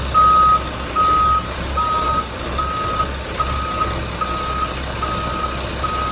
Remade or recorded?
recorded